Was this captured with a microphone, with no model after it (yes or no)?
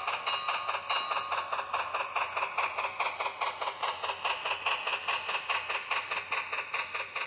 yes